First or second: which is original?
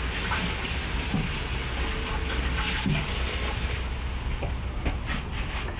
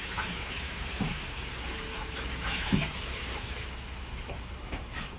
first